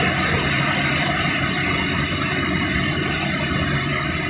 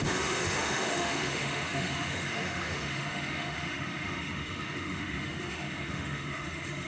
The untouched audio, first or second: first